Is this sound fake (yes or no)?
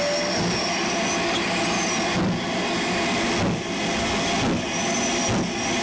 no